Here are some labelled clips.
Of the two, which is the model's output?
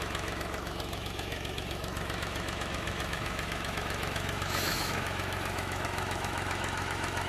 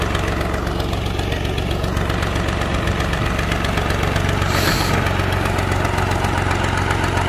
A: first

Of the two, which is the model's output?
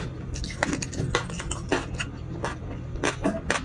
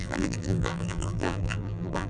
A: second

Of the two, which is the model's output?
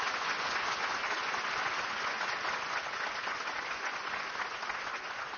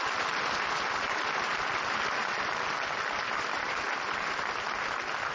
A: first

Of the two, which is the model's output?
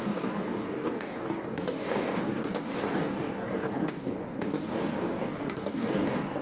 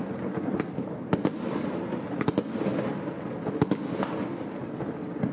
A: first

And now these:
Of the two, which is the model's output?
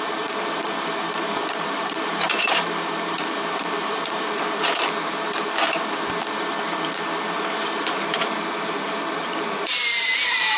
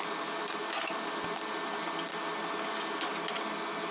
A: first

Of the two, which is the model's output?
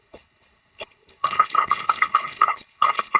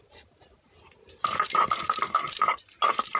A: first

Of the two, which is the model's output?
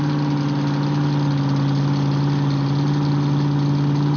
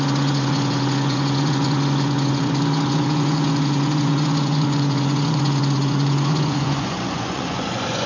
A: second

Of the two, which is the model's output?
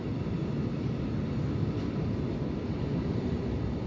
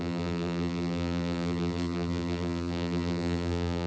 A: second